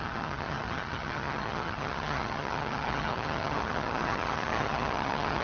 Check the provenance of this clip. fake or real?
fake